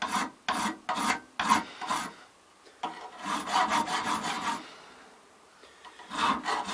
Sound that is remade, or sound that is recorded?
recorded